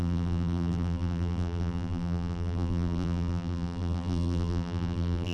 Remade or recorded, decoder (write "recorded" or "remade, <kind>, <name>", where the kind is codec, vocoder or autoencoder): remade, vocoder, BigVGAN v2